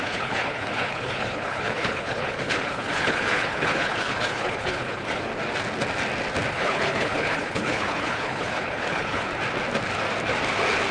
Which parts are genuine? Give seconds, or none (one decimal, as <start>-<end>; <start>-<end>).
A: 5.3-6.5; 9.3-10.9

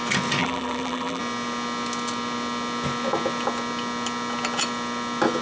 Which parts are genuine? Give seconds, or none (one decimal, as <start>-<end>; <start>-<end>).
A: 0.0-0.4; 1.2-5.4

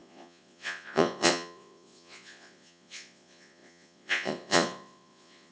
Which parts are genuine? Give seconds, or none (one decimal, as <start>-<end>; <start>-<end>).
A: none

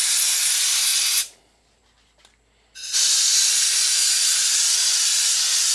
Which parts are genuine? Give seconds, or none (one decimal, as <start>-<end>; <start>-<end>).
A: 1.8-3.8

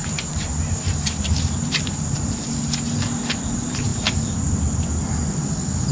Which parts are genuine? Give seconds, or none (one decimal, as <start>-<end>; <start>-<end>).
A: 0.7-5.9

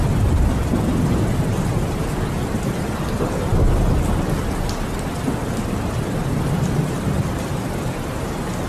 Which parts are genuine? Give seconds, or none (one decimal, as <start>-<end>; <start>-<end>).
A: 0.0-8.7